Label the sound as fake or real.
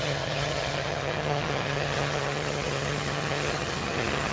fake